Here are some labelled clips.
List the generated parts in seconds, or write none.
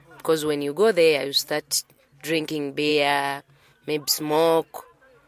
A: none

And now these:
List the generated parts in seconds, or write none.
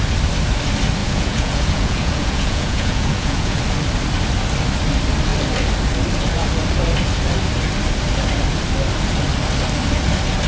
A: 1.0-3.6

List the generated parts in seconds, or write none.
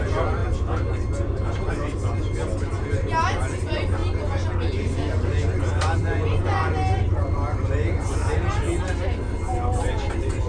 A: 6.0-6.7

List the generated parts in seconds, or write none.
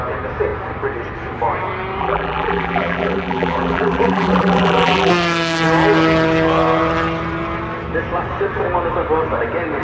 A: 2.0-5.1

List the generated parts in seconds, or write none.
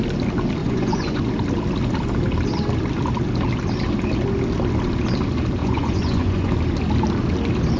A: 0.6-1.2; 5.6-6.5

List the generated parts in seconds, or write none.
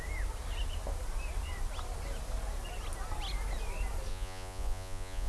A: 4.1-5.3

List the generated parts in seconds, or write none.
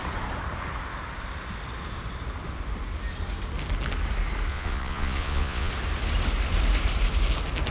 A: 4.5-5.7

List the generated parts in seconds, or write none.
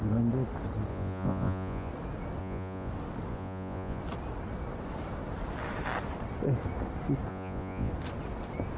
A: 0.9-1.9; 2.4-2.9; 3.3-4.0; 7.3-7.9